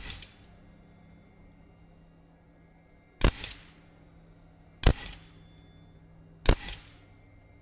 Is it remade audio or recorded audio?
recorded